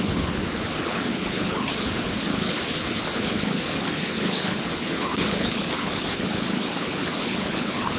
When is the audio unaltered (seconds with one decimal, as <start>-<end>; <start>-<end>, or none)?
none